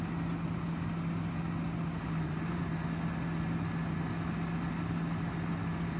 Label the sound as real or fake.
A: real